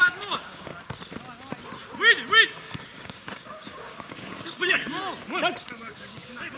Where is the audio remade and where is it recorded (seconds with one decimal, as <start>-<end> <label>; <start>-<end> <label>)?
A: 0.0-0.7 remade; 0.7-2.5 recorded; 2.5-5.0 remade; 5.0-5.6 recorded; 5.6-6.6 remade